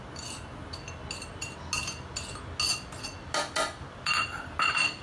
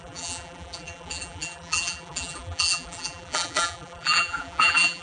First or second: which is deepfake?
second